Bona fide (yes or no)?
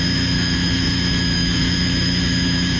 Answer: no